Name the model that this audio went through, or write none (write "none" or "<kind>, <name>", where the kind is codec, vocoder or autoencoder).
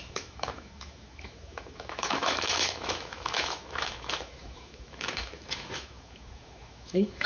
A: autoencoder, DAC-VAE